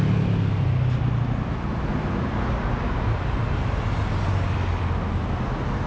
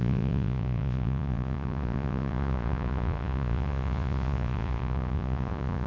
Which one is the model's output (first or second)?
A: second